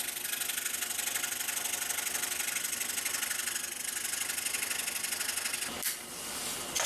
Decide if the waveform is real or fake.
real